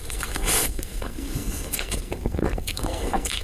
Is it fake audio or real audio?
fake